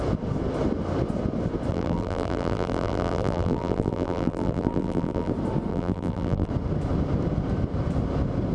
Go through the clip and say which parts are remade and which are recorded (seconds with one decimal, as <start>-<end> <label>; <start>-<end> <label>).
0.0-1.7 recorded; 1.7-5.3 remade; 5.3-5.7 recorded; 5.7-6.5 remade; 6.5-8.5 recorded